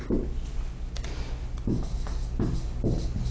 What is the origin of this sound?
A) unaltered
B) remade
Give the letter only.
A